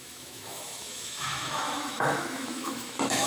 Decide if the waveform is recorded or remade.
remade